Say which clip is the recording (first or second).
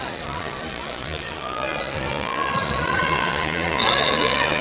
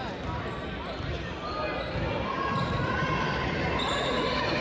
second